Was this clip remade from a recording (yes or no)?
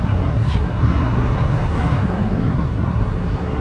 yes